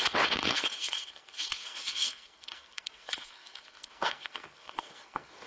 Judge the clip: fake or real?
fake